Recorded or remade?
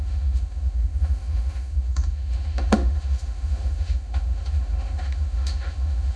remade